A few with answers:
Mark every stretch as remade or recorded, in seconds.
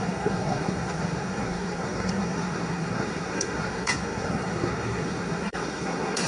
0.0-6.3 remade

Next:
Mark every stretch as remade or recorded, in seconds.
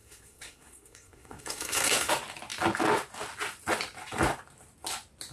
0.0-2.1 remade; 2.1-5.3 recorded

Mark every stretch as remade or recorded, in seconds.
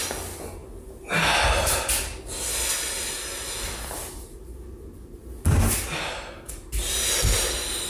0.0-7.9 recorded